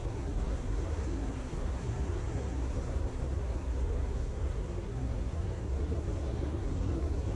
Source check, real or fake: fake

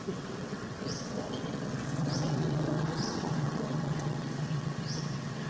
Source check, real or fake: fake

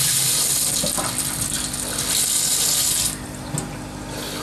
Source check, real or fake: real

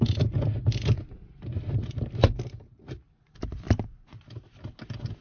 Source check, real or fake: real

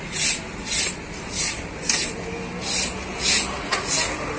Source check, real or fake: real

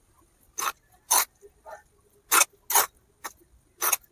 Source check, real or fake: real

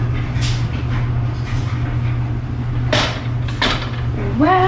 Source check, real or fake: real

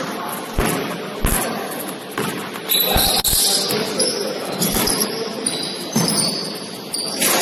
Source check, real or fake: real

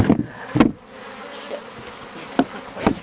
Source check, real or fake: real